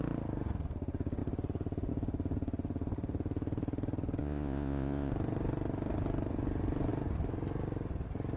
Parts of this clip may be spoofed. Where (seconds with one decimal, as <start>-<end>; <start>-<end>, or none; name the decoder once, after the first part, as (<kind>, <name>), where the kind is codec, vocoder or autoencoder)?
4.2-5.1 (vocoder, Vocos)